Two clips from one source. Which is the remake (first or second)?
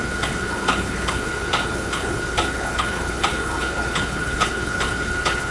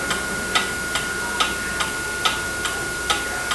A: first